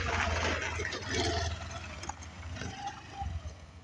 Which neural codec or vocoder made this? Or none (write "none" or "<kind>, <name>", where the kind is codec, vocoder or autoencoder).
none